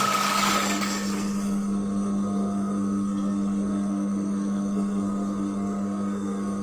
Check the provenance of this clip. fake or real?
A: fake